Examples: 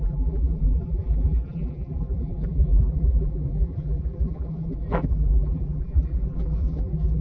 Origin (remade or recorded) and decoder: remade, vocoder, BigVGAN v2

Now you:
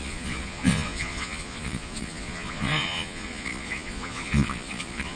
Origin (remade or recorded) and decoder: remade, vocoder, Vocos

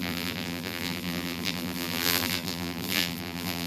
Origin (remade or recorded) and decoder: remade, vocoder, BigVGAN v2